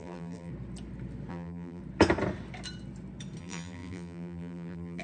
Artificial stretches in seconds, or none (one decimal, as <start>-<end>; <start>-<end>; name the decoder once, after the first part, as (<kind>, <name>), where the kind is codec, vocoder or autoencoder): 0.0-0.5 (vocoder, BigVGAN v2); 1.3-1.8; 3.4-5.0